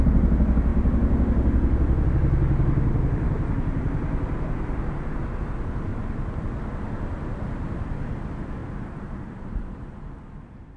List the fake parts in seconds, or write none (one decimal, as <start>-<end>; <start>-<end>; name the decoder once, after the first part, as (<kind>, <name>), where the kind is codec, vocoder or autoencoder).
5.9-6.4 (vocoder, BigVGAN v2); 8.6-9.7